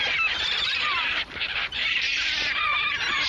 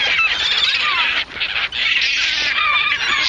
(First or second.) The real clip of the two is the second